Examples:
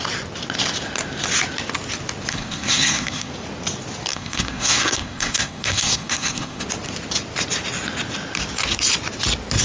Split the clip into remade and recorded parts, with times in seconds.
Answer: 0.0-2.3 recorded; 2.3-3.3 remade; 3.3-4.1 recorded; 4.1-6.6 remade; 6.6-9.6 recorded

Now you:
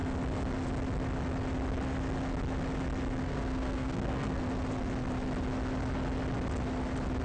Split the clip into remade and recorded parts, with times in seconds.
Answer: 0.0-3.2 recorded; 3.2-4.4 remade; 4.4-7.2 recorded

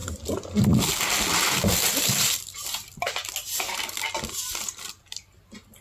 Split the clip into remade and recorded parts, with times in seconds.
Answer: 0.0-5.8 recorded

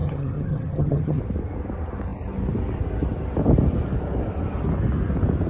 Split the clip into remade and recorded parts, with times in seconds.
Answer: 0.0-1.2 remade; 1.2-5.5 recorded

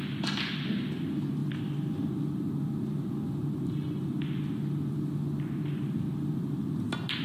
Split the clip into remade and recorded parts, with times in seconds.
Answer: 0.0-7.2 recorded